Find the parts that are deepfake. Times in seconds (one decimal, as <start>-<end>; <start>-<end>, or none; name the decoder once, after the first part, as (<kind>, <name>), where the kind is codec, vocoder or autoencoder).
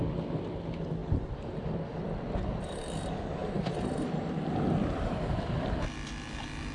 none